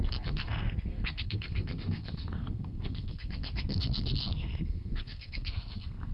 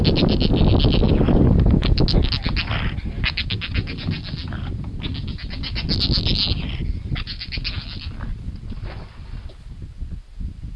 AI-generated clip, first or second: first